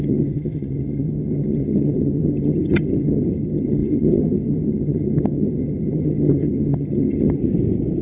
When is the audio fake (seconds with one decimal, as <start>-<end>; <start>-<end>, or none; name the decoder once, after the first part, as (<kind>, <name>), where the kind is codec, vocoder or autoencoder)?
0.0-7.4 (vocoder, HiFi-GAN)